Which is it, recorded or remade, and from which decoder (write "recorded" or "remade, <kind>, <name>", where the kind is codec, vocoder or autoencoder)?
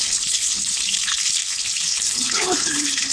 remade, codec, HILCodec